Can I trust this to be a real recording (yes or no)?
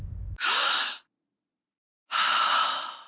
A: yes